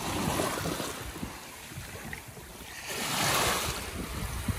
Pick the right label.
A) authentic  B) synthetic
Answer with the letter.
A